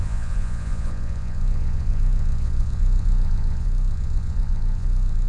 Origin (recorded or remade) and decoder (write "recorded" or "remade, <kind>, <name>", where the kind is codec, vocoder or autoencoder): remade, vocoder, Vocos